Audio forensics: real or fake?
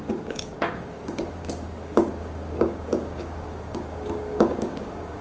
fake